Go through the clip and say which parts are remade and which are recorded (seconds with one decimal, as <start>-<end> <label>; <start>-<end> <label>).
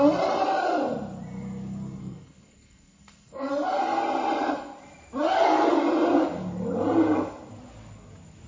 0.0-2.0 recorded; 2.0-3.5 remade; 3.5-8.5 recorded